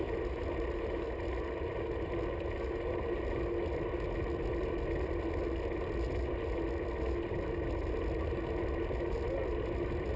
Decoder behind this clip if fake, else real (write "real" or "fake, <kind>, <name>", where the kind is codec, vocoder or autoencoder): real